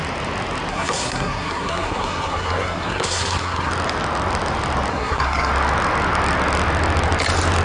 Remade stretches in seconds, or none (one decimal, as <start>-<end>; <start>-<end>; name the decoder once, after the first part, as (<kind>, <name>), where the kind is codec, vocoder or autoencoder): 0.7-3.7 (codec, SNAC); 4.9-5.5